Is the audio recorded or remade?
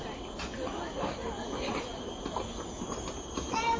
recorded